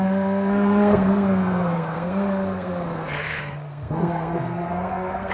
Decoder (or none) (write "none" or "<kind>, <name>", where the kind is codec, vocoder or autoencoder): codec, SNAC